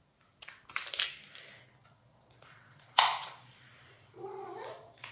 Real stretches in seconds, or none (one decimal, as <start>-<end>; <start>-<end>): 0.0-1.8